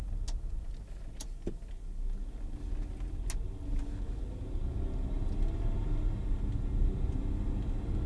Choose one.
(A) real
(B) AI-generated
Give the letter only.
A